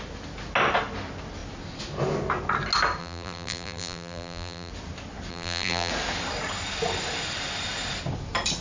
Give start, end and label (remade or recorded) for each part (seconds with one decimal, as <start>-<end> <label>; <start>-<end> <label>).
0.0-3.0 recorded; 3.0-4.7 remade; 4.7-5.3 recorded; 5.3-5.9 remade; 5.9-8.6 recorded